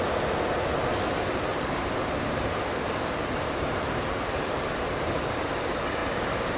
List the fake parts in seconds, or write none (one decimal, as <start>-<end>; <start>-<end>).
1.5-5.5; 6.0-6.6